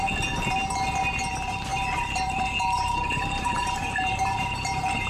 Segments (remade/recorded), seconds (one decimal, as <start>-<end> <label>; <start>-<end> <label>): 0.0-1.7 recorded; 1.7-5.1 remade